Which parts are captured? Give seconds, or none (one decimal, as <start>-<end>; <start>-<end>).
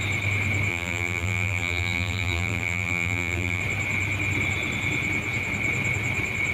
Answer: 0.0-0.7; 3.6-6.5